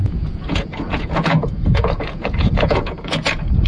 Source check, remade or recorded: remade